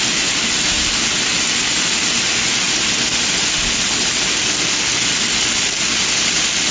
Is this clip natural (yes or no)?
yes